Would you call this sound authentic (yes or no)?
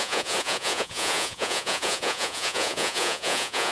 no